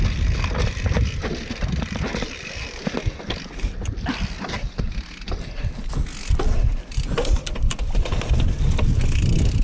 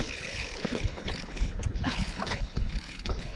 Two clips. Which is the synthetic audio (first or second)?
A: second